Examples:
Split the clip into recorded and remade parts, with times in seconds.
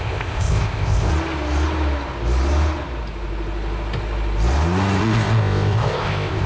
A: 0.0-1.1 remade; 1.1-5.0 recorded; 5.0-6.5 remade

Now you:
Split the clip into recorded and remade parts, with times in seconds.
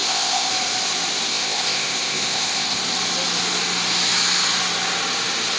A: 0.0-0.5 remade; 0.5-1.3 recorded; 1.3-2.8 remade; 2.8-5.6 recorded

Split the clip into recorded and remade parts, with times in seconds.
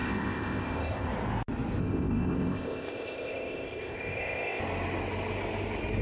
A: 0.0-1.1 remade; 1.1-1.8 recorded; 1.8-4.6 remade; 4.6-6.0 recorded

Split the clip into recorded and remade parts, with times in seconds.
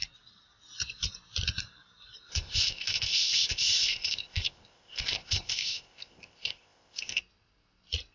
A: 0.0-2.3 recorded; 2.3-7.2 remade; 7.2-8.1 recorded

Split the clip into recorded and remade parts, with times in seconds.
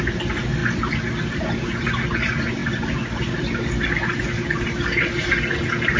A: 0.0-6.0 recorded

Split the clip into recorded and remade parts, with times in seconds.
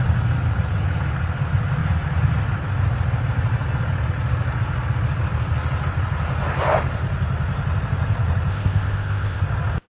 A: 0.0-8.5 recorded; 8.5-9.4 remade; 9.4-10.0 recorded